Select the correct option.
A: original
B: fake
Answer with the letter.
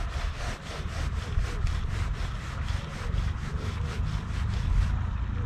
A